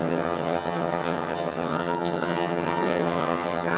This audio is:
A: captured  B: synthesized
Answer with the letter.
B